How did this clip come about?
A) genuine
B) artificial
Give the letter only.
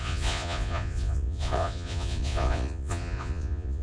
B